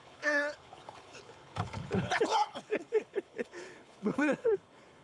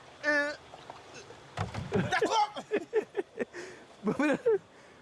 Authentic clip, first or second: second